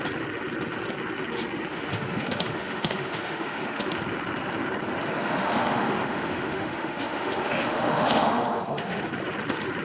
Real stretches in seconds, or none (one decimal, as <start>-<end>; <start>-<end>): 0.0-1.7; 3.9-5.2; 9.0-9.8